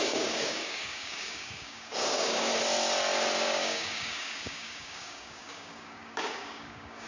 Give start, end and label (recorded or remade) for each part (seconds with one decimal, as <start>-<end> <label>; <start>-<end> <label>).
0.0-2.5 remade; 2.5-3.4 recorded; 3.4-7.1 remade